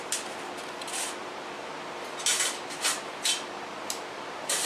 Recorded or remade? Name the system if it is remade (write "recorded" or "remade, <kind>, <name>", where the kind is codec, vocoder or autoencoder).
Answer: recorded